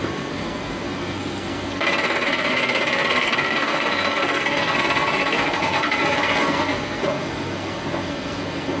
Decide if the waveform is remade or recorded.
remade